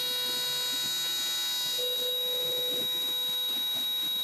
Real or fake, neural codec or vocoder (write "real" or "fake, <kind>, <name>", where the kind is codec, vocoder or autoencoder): real